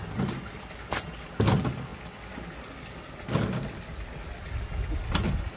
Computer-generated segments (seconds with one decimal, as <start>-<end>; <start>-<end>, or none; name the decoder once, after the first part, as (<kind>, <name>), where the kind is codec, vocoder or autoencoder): none